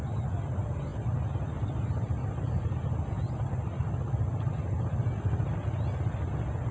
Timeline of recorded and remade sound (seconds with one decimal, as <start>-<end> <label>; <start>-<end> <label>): 0.0-6.7 recorded